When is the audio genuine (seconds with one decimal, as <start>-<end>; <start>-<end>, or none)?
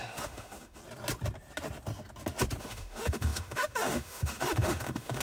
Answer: 0.8-2.6